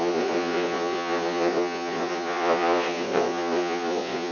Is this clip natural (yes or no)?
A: no